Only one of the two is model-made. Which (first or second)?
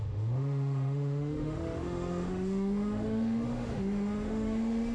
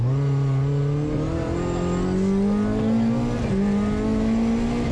first